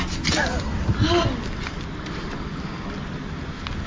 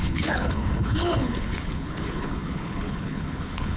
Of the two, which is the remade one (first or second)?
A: second